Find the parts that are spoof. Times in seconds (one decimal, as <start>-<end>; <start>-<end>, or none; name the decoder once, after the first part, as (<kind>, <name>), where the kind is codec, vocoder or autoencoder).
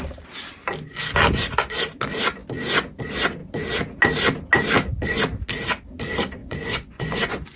6.4-7.6 (vocoder, Vocos)